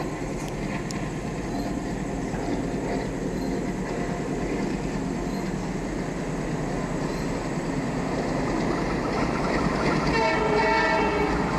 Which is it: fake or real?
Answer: real